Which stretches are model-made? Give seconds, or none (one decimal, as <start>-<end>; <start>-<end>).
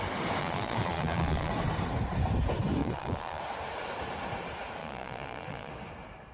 0.4-1.5; 2.8-3.4; 4.8-5.7